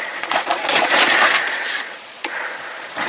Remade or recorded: remade